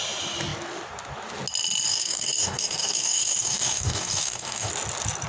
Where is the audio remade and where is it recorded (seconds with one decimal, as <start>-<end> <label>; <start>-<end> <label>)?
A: 0.0-1.9 recorded; 1.9-4.7 remade; 4.7-5.3 recorded